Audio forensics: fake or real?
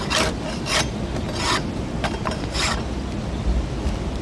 real